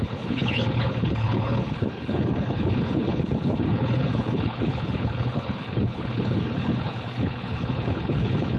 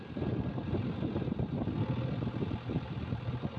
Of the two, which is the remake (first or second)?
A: first